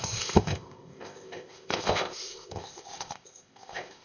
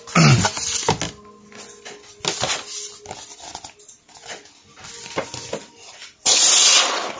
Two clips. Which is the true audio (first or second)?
second